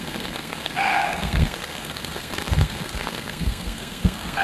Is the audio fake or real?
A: fake